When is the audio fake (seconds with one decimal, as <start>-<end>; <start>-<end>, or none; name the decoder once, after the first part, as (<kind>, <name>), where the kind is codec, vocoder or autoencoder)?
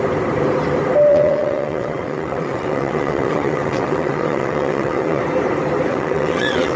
1.1-5.2 (vocoder, WaveNeXt); 5.9-6.8